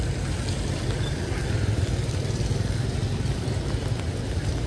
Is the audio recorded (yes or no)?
yes